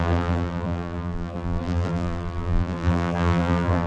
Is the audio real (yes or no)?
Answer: no